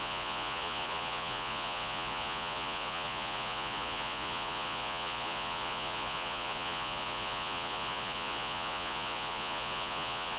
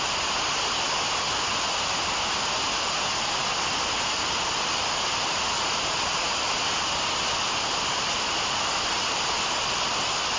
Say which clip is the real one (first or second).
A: second